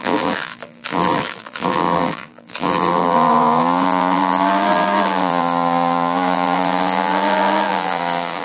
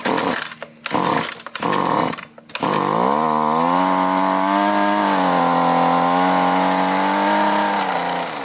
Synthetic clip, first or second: first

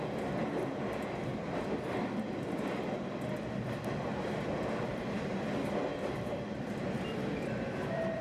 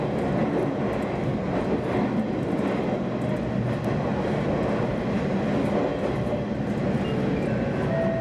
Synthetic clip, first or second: first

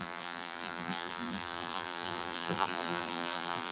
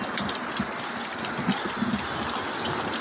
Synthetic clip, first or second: first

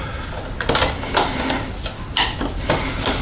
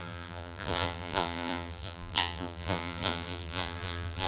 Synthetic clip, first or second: second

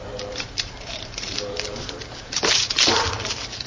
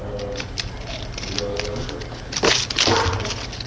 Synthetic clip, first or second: first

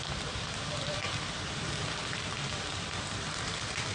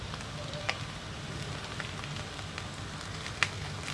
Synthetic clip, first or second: first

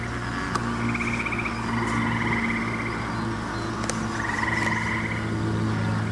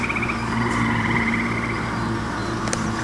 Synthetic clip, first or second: second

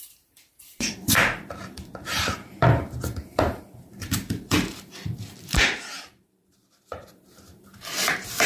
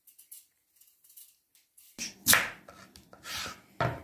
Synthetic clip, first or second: first